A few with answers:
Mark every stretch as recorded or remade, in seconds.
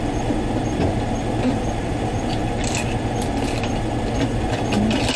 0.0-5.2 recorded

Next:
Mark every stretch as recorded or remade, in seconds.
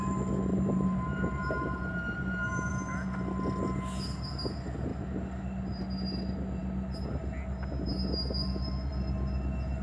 0.0-0.5 recorded; 0.5-2.7 remade; 2.7-9.8 recorded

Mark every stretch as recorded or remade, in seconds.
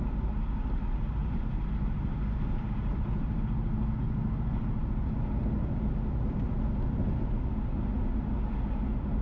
0.0-1.2 recorded; 1.2-3.4 remade; 3.4-9.2 recorded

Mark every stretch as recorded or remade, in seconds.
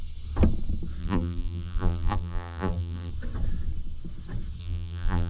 0.0-1.0 recorded; 1.0-3.1 remade; 3.1-4.6 recorded; 4.6-5.3 remade